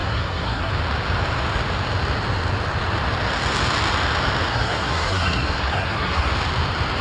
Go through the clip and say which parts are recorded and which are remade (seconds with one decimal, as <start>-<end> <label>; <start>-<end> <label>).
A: 0.0-0.7 remade; 0.7-4.5 recorded; 4.5-6.3 remade; 6.3-7.0 recorded